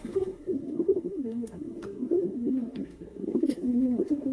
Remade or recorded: remade